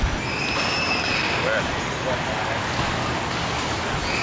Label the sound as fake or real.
real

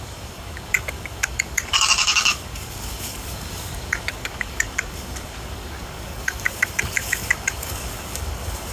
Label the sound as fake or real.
fake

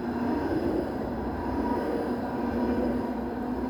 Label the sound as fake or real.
real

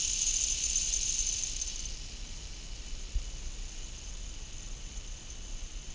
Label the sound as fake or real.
real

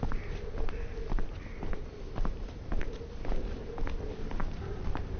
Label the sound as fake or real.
real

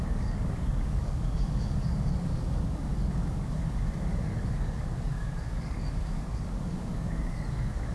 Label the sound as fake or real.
fake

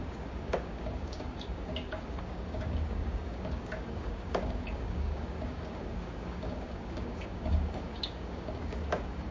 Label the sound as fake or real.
fake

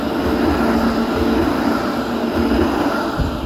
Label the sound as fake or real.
real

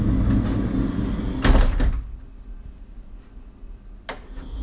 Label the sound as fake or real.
real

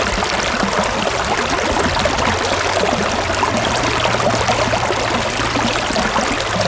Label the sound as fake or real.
real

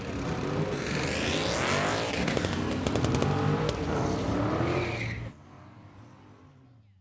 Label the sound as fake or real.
real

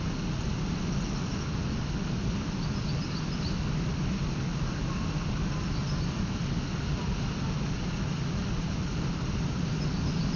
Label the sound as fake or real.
real